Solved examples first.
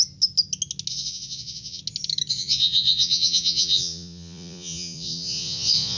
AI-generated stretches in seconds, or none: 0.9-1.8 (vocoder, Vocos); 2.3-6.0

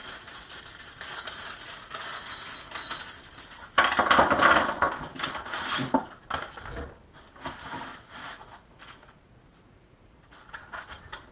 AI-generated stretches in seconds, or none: 0.0-0.6 (vocoder, Vocos); 1.1-2.2; 7.9-10.5

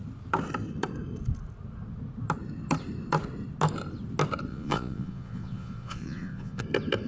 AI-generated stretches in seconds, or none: 4.5-6.6 (vocoder, Vocos)